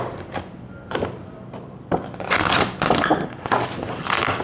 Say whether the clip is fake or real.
real